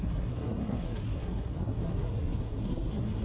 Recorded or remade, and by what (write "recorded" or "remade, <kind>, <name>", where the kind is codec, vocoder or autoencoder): remade, codec, SNAC